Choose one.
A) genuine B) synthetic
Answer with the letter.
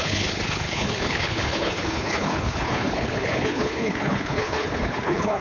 B